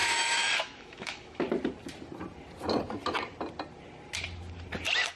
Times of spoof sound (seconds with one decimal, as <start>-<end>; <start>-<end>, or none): 0.0-1.4